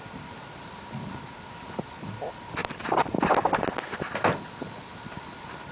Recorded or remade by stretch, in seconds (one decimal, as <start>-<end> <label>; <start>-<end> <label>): 0.0-2.6 recorded; 2.6-3.2 remade; 3.2-5.7 recorded